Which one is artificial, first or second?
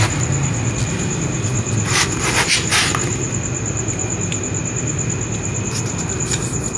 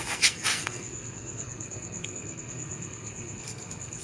second